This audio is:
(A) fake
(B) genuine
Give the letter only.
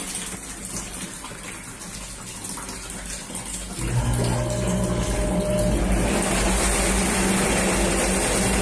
B